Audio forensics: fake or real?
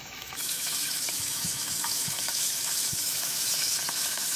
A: fake